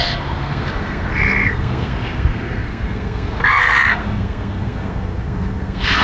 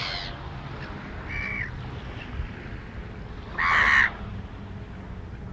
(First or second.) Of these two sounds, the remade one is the first